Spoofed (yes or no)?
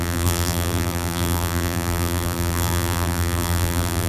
yes